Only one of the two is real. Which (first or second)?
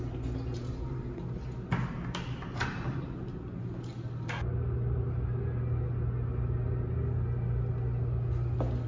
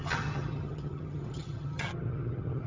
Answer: first